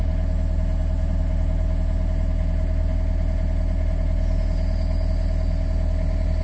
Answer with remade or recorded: recorded